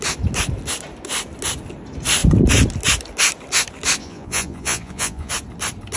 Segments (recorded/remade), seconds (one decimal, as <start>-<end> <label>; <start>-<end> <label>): 0.0-4.0 recorded; 4.0-5.3 remade; 5.3-6.0 recorded